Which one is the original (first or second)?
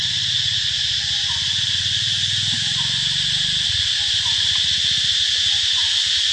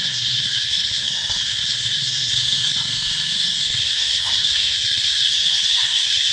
first